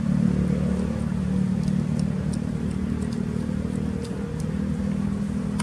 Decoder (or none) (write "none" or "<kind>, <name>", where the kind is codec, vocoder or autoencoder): none